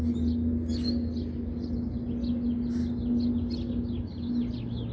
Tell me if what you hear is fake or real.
real